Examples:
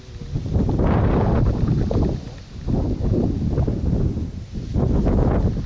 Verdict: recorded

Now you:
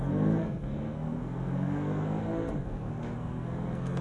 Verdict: remade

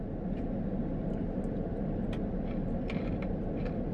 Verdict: recorded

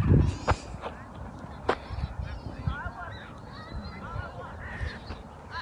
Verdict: recorded